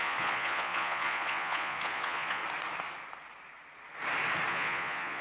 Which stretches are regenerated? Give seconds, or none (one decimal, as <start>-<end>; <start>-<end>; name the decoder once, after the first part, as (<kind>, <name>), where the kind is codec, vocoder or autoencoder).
0.0-2.4 (vocoder, Vocos); 4.5-5.2